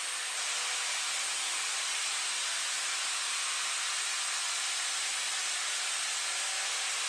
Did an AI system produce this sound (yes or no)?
yes